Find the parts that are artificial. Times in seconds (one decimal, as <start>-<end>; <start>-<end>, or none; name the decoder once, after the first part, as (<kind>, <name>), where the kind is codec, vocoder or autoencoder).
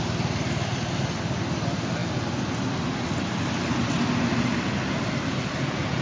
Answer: none